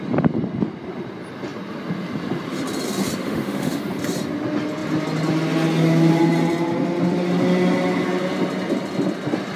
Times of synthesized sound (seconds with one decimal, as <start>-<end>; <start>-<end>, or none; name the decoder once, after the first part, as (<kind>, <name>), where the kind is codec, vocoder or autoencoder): 3.2-3.8 (autoencoder, DAC-VAE)